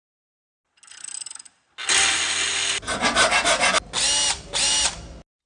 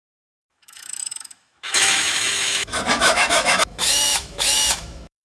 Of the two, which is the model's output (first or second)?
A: second